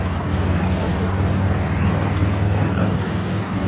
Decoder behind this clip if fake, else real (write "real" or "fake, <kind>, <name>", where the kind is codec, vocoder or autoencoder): fake, codec, DAC